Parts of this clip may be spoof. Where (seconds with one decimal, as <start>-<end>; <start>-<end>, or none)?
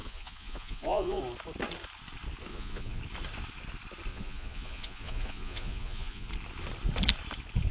0.0-1.2; 2.5-3.0; 4.1-6.3